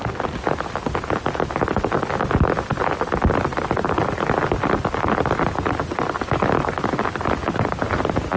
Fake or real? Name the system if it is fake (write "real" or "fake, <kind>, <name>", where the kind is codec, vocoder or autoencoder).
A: real